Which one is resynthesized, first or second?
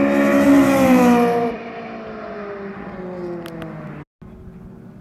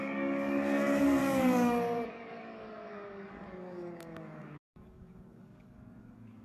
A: second